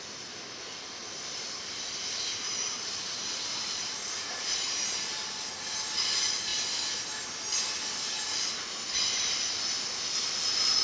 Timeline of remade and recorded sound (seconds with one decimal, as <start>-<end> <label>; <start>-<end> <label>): 0.0-1.0 recorded; 1.0-5.5 remade; 5.5-10.8 recorded